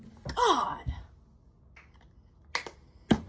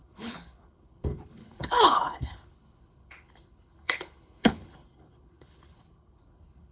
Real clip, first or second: first